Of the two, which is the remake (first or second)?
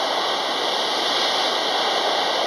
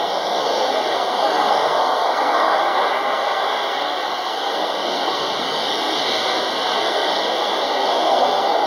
second